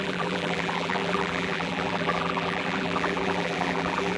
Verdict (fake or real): fake